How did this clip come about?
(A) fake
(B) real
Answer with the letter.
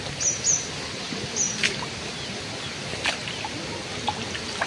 B